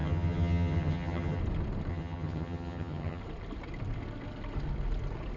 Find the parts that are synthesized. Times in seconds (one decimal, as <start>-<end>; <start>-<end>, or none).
0.0-1.4; 1.9-3.2